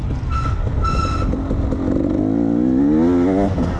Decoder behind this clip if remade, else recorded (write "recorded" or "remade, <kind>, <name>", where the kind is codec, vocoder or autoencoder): recorded